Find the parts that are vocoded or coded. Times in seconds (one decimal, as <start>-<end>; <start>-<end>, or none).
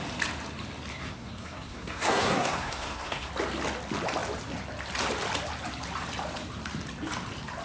0.9-3.3